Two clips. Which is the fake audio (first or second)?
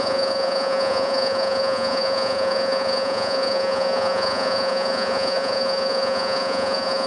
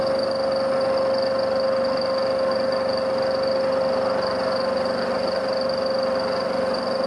first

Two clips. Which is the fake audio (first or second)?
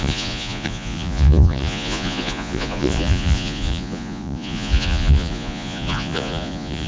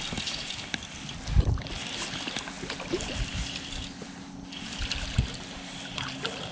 first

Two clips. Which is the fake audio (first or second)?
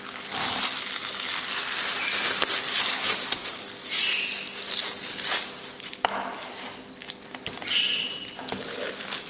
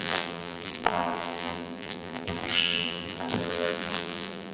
second